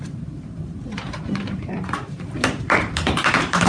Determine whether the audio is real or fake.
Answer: fake